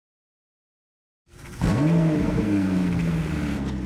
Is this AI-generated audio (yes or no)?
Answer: yes